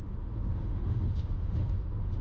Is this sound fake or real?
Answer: fake